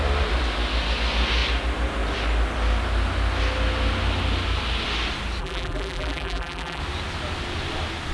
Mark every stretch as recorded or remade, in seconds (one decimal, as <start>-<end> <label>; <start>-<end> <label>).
0.0-5.4 recorded; 5.4-6.8 remade; 6.8-8.1 recorded